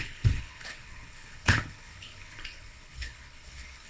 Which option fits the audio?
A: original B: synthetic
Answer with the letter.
B